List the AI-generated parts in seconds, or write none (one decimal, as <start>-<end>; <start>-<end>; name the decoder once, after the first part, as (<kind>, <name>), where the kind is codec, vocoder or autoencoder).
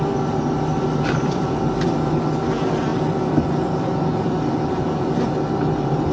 none